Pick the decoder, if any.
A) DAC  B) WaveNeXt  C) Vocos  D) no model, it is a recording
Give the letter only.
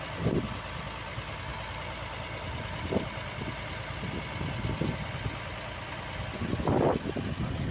D